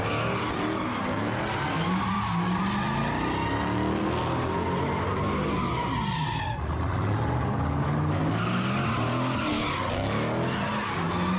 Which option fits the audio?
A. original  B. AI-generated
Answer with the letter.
A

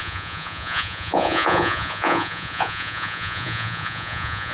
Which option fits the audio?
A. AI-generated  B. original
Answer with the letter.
A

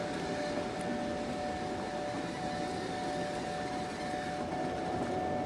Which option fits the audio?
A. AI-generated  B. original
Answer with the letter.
B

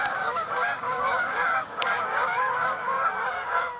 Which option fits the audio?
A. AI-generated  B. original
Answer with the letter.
A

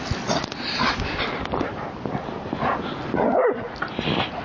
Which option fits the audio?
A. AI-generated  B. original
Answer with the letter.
B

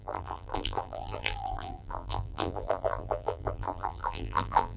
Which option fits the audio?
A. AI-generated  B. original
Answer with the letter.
A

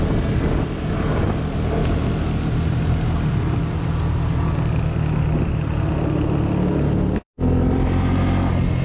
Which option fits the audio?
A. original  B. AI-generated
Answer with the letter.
A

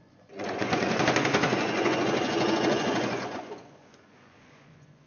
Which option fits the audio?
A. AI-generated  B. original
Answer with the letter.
A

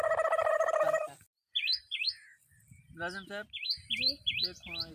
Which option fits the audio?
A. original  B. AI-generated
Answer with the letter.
A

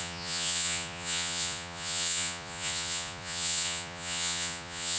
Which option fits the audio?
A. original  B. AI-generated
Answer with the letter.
B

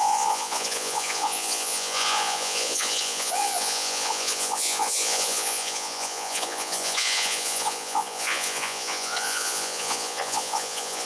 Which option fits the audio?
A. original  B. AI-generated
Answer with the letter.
B